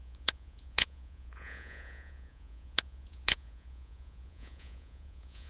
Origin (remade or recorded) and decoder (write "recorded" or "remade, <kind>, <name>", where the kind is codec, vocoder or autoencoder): remade, vocoder, Vocos